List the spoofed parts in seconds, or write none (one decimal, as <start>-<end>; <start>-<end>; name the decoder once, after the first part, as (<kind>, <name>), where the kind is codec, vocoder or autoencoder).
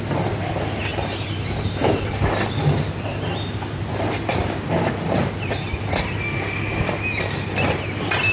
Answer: 0.9-2.1 (vocoder, BigVGAN v2); 3.1-4.9